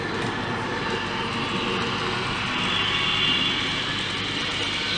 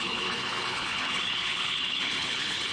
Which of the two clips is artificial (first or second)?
second